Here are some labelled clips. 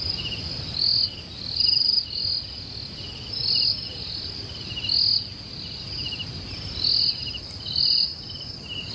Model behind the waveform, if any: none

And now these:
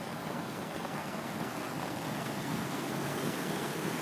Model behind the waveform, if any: codec, SNAC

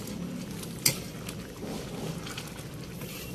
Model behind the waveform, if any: none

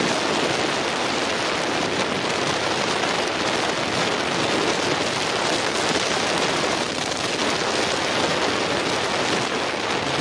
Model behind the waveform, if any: none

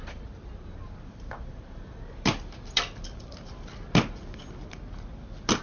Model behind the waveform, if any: none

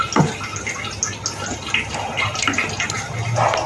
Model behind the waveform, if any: none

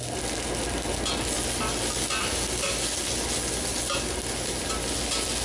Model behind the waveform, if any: none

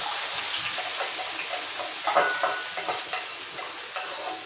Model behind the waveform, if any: none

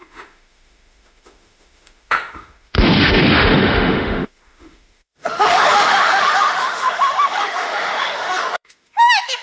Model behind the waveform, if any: autoencoder, DAC-VAE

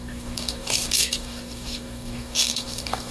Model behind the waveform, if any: codec, DAC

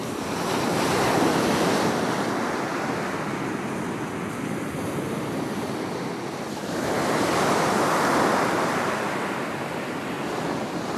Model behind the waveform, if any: none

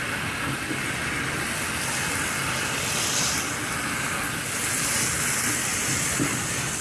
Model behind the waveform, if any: none